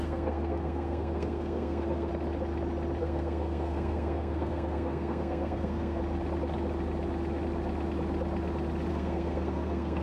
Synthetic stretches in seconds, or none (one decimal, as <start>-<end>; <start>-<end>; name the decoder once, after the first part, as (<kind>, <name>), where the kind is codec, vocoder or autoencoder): 0.0-2.1 (codec, SNAC); 3.0-6.0; 8.9-10.0

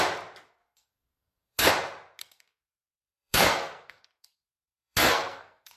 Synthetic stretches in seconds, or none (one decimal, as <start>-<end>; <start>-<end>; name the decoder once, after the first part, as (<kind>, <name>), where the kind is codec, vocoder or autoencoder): 0.6-1.7 (codec, SNAC); 2.2-5.8

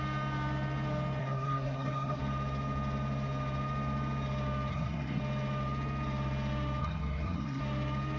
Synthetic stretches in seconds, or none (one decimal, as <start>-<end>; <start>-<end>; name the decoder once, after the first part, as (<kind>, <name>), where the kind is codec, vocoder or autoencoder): 1.2-2.2 (codec, SNAC); 4.7-5.2; 6.8-7.6

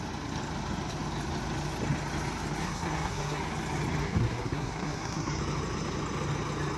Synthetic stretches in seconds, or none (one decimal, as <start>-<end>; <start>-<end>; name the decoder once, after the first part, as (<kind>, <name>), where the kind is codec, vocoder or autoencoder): 2.6-3.4 (codec, SNAC); 4.0-5.4

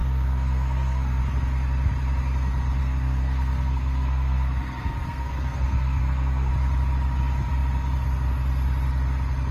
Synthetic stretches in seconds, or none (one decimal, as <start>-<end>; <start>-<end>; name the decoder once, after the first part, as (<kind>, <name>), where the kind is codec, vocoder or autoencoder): 0.0-1.2 (codec, SNAC); 2.8-6.5

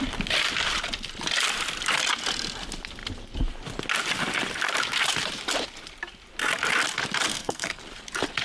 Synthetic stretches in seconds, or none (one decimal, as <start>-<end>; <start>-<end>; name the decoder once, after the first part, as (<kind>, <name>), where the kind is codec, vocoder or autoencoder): 7.3-7.8 (codec, SNAC)